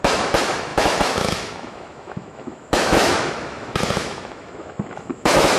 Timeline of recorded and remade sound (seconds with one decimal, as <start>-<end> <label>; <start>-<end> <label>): 0.0-5.6 remade